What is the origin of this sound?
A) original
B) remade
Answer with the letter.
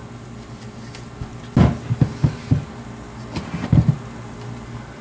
A